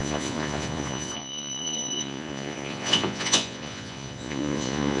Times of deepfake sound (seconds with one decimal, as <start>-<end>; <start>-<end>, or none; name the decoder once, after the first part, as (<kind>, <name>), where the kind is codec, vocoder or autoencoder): 0.0-5.0 (vocoder, Vocos)

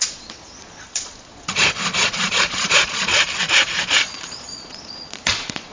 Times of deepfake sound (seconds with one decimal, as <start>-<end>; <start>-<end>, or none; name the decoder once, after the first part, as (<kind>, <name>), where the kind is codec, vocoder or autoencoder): 0.0-3.1 (vocoder, Vocos); 3.8-5.7